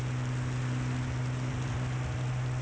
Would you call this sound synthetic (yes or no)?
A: no